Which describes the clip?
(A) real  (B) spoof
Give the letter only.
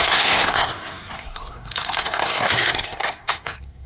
B